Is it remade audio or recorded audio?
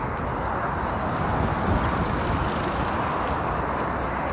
recorded